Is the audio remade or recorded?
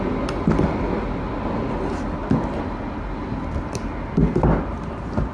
recorded